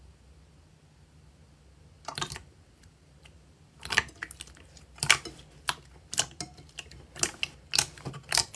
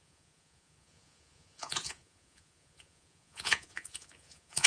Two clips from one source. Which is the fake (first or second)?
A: second